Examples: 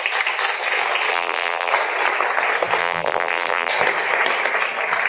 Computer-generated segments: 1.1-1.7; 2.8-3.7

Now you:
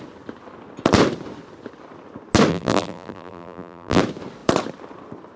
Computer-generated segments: 2.5-4.0

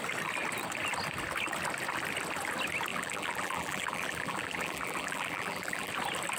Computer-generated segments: 2.9-5.9

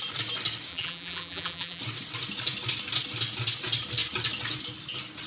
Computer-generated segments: 0.7-1.8

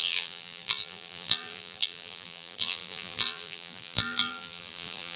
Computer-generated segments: 0.0-5.2

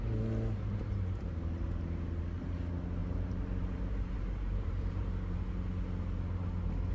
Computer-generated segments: 3.0-5.4

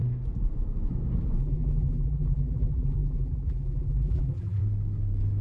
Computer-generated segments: 1.4-4.6